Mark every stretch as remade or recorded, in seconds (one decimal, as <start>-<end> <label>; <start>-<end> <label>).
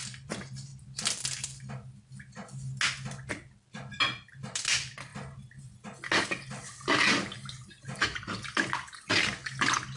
0.0-10.0 recorded